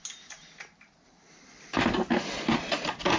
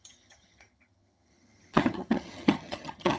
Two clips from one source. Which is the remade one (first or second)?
second